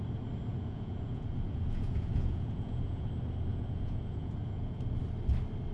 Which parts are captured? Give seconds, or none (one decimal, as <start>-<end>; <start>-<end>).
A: 0.0-0.5; 3.1-3.5; 4.9-5.7